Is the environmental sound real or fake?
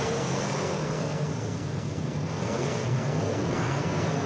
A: fake